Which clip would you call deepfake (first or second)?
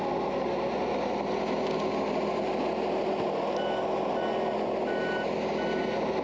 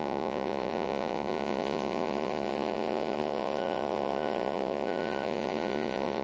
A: second